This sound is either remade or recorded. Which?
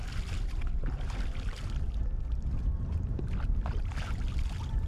recorded